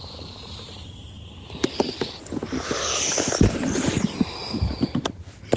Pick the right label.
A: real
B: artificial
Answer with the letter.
A